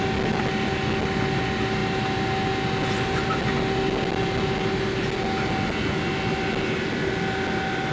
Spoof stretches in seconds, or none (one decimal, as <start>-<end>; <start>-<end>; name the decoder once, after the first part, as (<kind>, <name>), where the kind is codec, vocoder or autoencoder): none